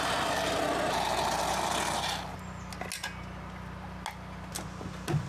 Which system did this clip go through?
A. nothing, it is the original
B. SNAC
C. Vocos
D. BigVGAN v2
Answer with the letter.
A